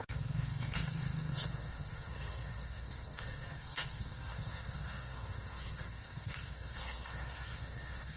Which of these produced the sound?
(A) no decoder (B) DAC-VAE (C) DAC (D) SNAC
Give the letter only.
D